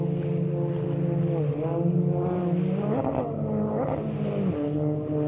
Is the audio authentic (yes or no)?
yes